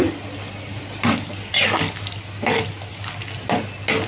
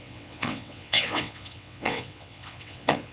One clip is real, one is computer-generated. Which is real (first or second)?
first